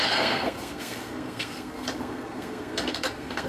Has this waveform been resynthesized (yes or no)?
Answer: yes